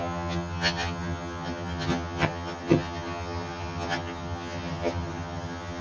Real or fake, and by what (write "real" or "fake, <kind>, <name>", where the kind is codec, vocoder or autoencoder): fake, vocoder, HiFi-GAN